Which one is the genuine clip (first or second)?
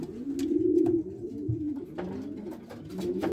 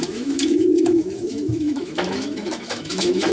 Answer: first